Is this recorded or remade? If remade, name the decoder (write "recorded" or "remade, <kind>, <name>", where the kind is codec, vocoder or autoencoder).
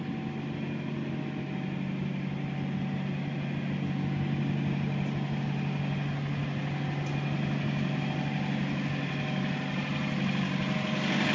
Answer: recorded